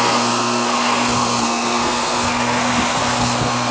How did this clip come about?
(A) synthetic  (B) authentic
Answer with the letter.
A